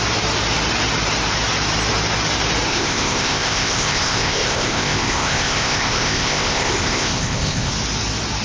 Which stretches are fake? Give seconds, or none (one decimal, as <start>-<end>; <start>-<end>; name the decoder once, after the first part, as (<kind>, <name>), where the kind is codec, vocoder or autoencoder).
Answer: 2.7-7.7 (codec, ZipCodec)